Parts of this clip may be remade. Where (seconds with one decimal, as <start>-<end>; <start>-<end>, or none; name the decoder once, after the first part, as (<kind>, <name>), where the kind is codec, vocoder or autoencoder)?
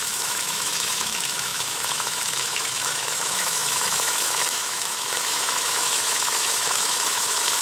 0.0-7.6 (autoencoder, DAC-VAE)